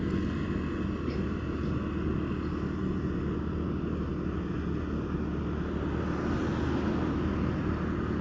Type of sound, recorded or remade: recorded